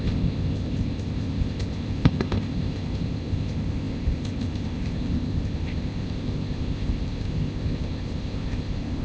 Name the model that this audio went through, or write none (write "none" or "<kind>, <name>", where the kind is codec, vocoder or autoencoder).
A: codec, ZipCodec